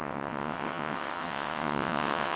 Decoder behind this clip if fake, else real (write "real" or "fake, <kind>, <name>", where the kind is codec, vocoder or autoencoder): fake, vocoder, WaveNeXt